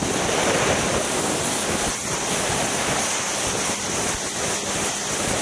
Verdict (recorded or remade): recorded